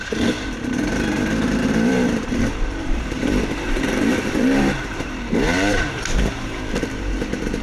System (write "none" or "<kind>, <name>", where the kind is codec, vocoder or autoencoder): vocoder, BigVGAN v2